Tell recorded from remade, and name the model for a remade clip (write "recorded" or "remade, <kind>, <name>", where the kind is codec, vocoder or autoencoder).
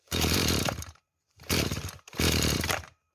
remade, vocoder, BigVGAN v2